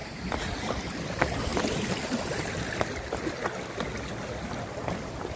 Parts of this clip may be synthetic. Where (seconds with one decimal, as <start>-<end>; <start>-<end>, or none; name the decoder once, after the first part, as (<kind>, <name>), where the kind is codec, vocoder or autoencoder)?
none